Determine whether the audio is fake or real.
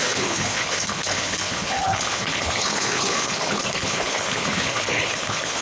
fake